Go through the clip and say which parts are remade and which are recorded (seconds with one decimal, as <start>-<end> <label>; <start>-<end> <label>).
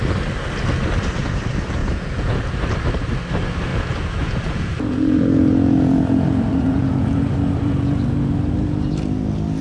0.0-1.8 recorded; 1.8-2.4 remade; 2.4-3.7 recorded; 3.7-8.9 remade; 8.9-9.6 recorded